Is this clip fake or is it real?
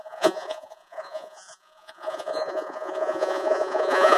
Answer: fake